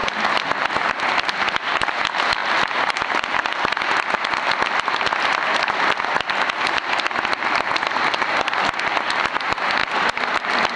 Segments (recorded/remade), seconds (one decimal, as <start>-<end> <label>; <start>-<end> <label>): 0.0-0.7 remade; 0.7-2.4 recorded; 2.4-4.1 remade; 4.1-9.8 recorded; 9.8-10.8 remade